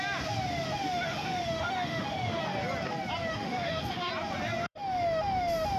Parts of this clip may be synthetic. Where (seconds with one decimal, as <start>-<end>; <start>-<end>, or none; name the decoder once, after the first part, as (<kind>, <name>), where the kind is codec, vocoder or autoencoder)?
0.8-2.4 (autoencoder, DAC-VAE); 3.3-4.1; 4.6-5.8